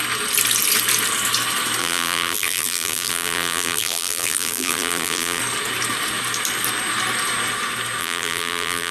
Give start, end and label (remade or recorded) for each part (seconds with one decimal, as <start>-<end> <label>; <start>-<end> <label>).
0.0-1.8 recorded; 1.8-5.4 remade; 5.4-8.0 recorded; 8.0-8.9 remade